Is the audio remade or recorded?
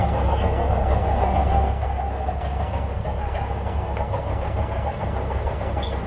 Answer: remade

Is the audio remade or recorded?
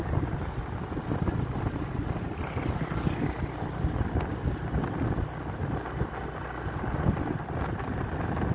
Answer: recorded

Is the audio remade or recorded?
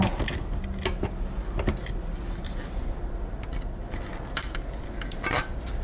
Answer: remade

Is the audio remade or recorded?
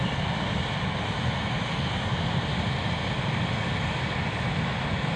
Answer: recorded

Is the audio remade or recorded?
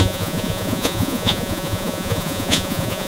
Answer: remade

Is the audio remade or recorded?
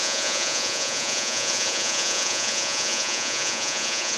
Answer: remade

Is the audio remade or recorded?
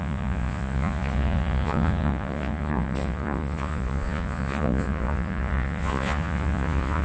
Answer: remade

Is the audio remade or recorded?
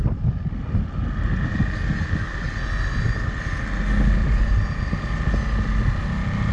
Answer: recorded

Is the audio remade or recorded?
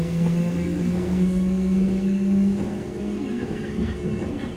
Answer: remade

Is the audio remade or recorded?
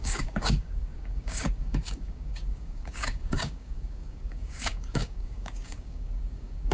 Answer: remade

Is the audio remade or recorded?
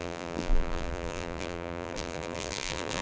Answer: remade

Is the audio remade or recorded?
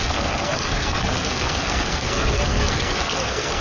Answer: remade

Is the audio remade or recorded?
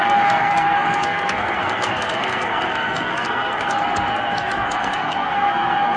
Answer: remade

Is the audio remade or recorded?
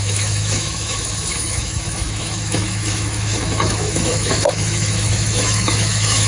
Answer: remade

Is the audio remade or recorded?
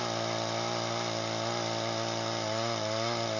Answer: recorded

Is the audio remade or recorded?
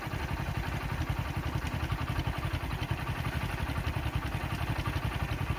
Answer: recorded